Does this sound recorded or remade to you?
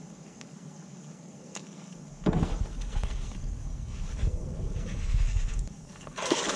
remade